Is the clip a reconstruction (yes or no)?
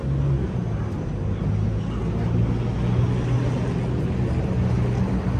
no